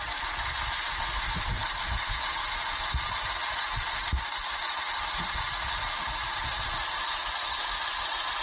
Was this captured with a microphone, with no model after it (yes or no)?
yes